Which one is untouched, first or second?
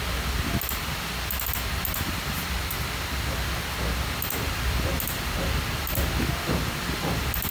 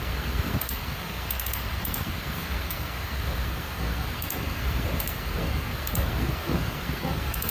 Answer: first